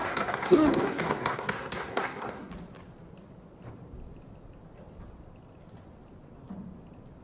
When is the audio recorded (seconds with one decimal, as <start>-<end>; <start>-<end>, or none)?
2.5-7.2